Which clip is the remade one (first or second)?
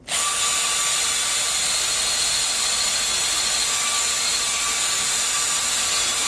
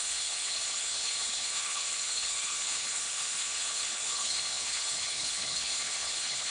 second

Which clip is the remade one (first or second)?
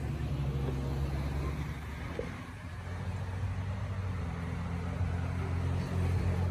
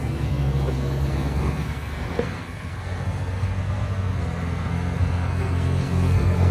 second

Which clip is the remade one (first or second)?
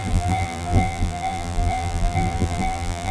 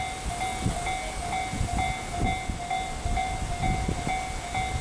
first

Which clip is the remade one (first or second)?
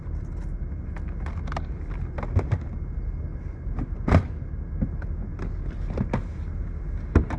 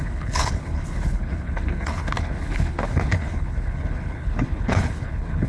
second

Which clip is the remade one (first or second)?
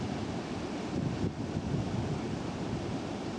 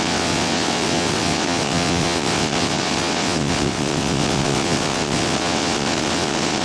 second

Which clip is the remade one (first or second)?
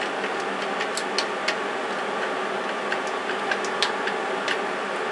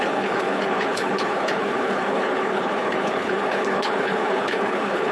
second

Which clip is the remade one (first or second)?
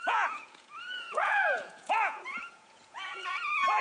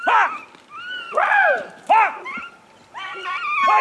first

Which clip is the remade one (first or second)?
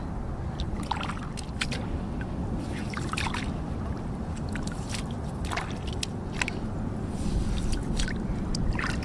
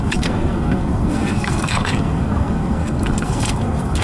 second